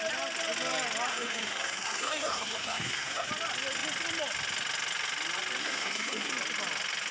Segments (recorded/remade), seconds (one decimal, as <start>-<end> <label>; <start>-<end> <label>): 0.0-1.1 recorded; 1.1-3.3 remade; 3.3-5.6 recorded; 5.6-6.3 remade; 6.3-7.1 recorded

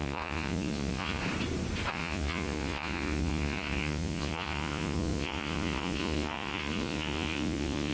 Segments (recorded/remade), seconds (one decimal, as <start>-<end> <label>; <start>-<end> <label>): 0.0-1.2 remade; 1.2-1.9 recorded; 1.9-7.9 remade